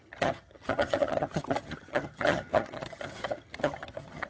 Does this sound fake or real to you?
fake